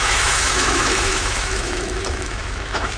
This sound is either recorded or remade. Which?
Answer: remade